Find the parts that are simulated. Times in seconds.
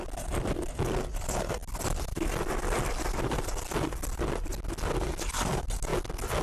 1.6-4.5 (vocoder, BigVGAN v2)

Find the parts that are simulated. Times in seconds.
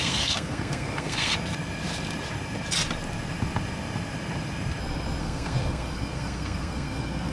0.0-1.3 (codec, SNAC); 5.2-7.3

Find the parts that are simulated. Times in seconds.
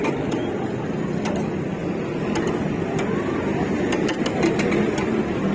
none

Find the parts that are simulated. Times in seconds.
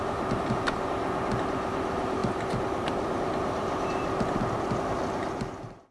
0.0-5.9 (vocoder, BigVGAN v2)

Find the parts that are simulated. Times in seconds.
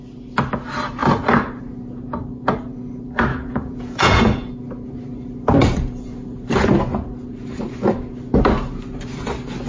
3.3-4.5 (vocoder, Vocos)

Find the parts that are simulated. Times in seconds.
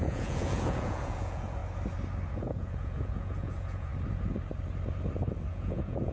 0.0-1.6 (vocoder, Vocos); 2.3-3.9; 5.5-6.1